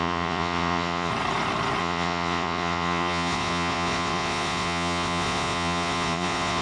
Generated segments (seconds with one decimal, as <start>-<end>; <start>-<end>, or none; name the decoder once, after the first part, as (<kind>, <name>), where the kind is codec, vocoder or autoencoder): 0.0-1.1 (vocoder, Vocos); 1.8-6.6